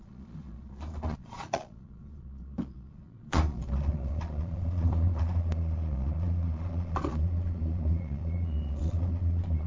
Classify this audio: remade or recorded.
remade